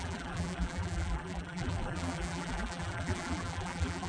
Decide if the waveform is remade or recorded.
remade